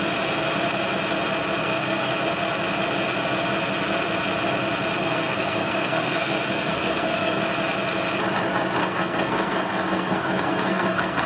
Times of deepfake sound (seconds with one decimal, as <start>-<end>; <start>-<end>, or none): 1.6-2.1; 5.0-7.4; 8.8-11.3